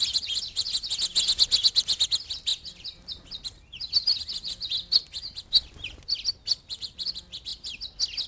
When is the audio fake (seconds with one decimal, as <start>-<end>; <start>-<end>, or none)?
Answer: none